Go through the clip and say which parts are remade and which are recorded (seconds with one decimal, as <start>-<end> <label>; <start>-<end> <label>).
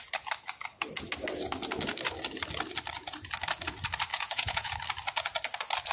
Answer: 0.0-4.1 recorded; 4.1-4.7 remade; 4.7-5.9 recorded